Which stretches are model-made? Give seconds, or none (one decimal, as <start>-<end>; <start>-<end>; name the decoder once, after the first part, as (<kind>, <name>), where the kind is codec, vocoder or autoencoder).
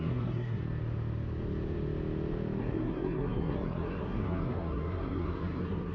0.0-0.6 (codec, SNAC); 2.6-5.9